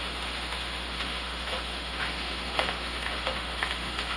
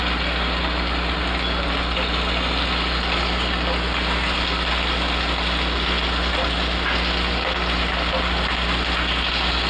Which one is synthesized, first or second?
first